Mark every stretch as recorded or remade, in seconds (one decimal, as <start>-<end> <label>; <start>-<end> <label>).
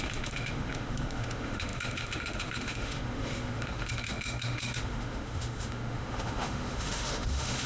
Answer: 0.0-7.7 remade